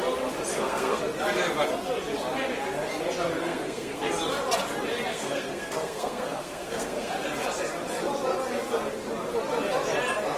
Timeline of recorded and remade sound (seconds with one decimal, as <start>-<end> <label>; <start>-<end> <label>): 0.0-0.5 recorded; 0.5-1.0 remade; 1.0-3.4 recorded; 3.4-4.1 remade; 4.1-5.1 recorded; 5.1-7.1 remade; 7.1-10.4 recorded